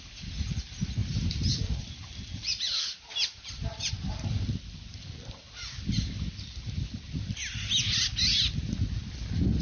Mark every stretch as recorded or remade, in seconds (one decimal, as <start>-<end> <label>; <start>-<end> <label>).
0.0-1.0 recorded; 1.0-3.9 remade; 3.9-9.6 recorded